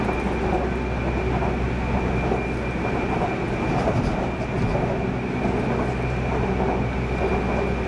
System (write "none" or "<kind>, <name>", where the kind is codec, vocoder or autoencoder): none